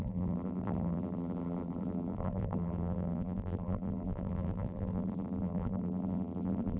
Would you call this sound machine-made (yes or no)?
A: yes